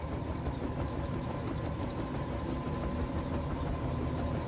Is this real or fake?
real